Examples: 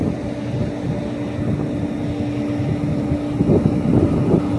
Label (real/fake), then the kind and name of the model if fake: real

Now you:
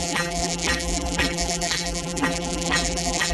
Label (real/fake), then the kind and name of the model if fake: fake, vocoder, BigVGAN v2